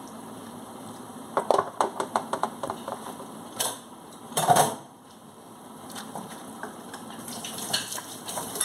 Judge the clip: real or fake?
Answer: fake